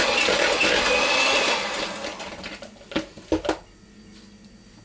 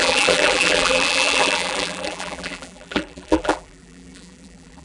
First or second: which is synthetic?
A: second